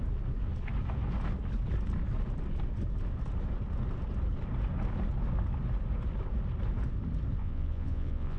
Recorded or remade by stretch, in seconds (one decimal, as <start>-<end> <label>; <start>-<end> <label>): 0.0-7.4 recorded; 7.4-8.4 remade